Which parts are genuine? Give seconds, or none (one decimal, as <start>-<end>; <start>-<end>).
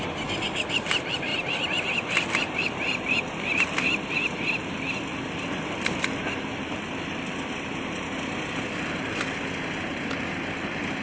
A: 0.0-11.0